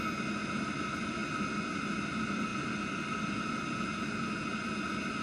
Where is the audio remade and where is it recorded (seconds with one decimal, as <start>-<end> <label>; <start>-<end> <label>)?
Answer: 0.0-5.2 recorded